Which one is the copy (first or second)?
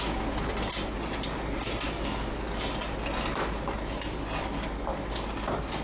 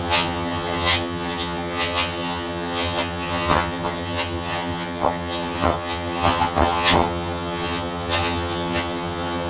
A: second